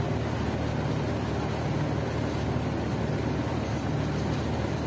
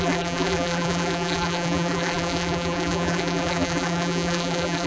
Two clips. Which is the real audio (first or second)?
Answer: first